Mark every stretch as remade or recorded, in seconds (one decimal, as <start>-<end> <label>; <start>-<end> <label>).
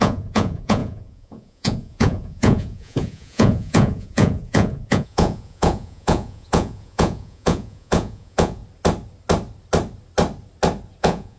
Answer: 0.0-8.6 remade; 8.6-11.0 recorded; 11.0-11.4 remade